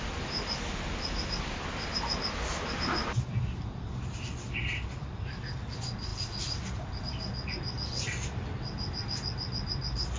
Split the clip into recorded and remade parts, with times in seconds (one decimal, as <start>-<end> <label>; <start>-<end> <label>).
0.0-10.2 recorded